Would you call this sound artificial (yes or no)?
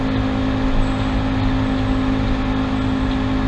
no